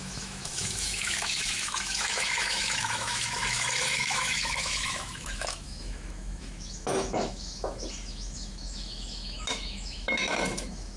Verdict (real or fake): fake